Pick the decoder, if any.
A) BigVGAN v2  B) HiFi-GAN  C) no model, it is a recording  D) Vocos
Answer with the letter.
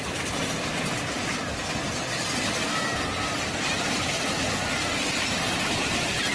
C